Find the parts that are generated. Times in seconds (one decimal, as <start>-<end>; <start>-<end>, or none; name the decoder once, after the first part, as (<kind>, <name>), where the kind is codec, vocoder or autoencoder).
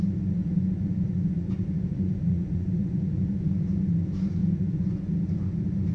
0.4-3.9 (vocoder, Vocos); 4.4-5.1